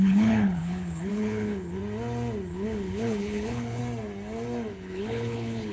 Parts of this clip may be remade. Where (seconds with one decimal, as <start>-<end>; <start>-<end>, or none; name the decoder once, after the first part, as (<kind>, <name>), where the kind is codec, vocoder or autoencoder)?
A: 0.0-1.8 (codec, HILCodec); 2.5-3.8; 4.7-5.7